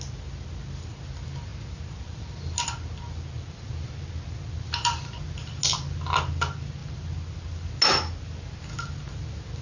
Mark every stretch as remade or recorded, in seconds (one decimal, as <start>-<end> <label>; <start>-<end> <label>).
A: 0.0-9.6 recorded